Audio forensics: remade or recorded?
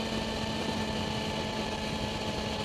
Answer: recorded